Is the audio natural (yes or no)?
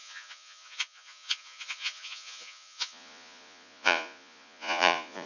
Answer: no